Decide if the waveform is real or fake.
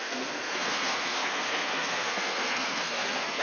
fake